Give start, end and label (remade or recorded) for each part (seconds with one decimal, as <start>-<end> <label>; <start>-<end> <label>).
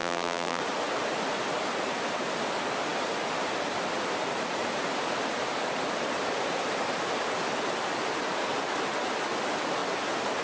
0.0-0.6 remade; 0.6-10.4 recorded